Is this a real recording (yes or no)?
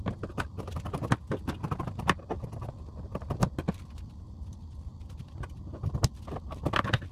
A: yes